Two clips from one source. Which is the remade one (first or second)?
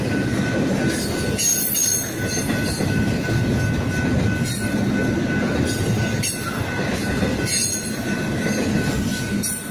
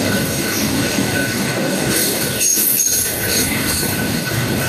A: second